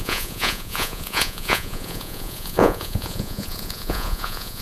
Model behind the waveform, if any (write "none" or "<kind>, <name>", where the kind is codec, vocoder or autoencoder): vocoder, Vocos